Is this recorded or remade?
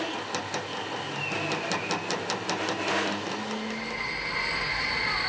recorded